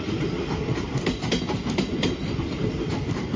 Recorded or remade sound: recorded